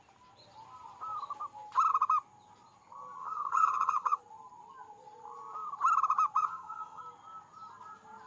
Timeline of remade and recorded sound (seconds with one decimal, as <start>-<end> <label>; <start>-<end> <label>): 0.0-3.2 recorded; 3.2-4.2 remade; 4.2-6.4 recorded; 6.4-7.0 remade; 7.0-8.3 recorded